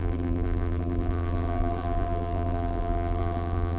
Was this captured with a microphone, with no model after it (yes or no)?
no